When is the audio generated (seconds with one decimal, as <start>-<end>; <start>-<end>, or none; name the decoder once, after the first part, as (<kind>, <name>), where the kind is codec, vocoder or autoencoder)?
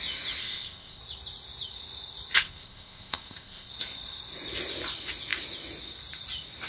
0.4-1.0 (codec, ZipCodec); 2.4-3.7